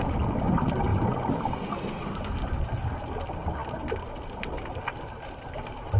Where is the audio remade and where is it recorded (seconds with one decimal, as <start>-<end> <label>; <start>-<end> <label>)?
0.0-6.0 recorded

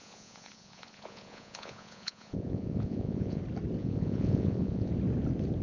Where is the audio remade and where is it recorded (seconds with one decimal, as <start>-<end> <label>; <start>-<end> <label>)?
0.0-3.4 remade; 3.4-3.8 recorded; 3.8-4.9 remade; 4.9-5.6 recorded